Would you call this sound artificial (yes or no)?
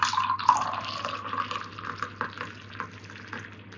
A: no